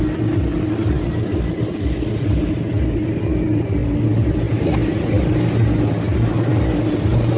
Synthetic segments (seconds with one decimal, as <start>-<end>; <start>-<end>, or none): none